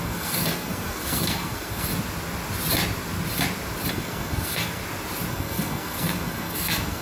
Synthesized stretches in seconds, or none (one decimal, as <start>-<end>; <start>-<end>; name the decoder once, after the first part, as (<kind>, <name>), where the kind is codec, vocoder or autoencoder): 0.0-1.9 (codec, SNAC); 3.9-4.8; 5.3-7.0